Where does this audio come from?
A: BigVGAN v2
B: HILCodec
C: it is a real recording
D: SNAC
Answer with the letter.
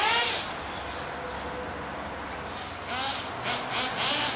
C